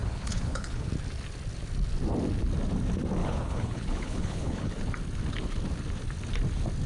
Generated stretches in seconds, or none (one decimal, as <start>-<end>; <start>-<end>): 0.0-0.9; 3.2-4.7